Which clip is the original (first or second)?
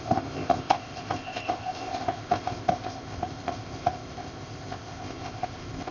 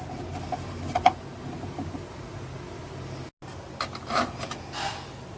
second